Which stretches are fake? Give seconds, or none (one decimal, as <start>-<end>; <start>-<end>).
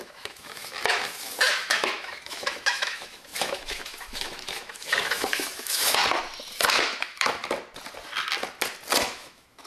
0.0-6.0; 6.7-7.4; 9.0-9.7